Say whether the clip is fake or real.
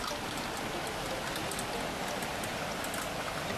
real